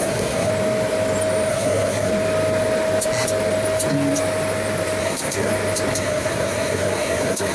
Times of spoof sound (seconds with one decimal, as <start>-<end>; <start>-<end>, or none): 0.0-0.5; 1.5-2.1; 5.0-5.5; 6.0-7.5